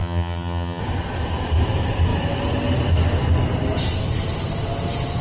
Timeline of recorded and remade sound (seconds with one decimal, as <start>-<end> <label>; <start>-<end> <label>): 0.0-0.8 remade; 0.8-5.2 recorded